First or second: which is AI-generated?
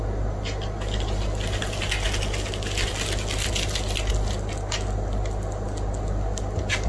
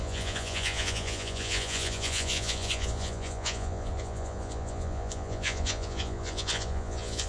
second